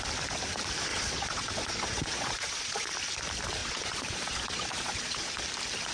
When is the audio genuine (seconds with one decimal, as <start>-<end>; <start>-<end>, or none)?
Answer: 0.0-0.9; 2.9-3.6; 5.3-5.9